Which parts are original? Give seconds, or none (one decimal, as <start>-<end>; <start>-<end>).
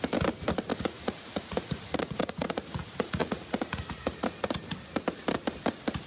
0.0-0.7; 4.4-6.1